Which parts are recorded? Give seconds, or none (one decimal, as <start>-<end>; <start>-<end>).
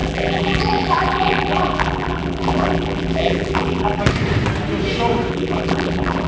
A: 4.0-5.3